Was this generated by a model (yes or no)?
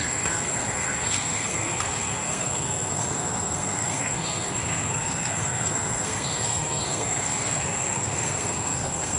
yes